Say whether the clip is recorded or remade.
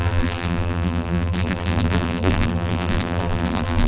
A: remade